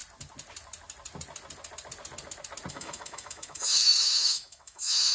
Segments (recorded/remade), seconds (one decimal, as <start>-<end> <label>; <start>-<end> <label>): 0.0-2.7 recorded; 2.7-5.1 remade